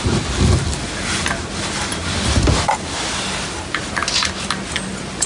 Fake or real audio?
real